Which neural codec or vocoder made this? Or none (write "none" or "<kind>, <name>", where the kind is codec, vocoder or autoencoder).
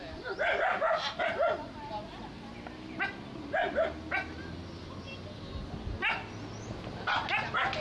none